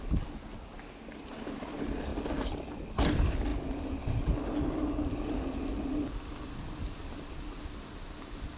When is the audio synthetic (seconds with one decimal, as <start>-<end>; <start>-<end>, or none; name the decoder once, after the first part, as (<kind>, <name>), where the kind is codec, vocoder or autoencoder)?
none